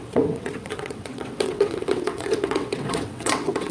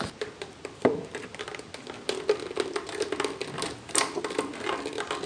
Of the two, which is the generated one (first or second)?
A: first